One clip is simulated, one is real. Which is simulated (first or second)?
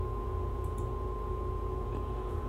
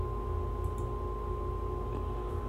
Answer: first